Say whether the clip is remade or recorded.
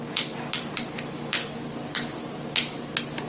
recorded